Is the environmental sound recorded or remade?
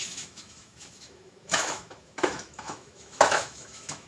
remade